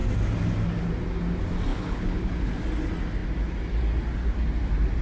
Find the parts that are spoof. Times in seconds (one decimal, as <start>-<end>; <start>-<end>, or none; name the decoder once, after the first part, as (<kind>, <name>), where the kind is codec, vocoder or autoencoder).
1.7-2.5 (codec, HILCodec)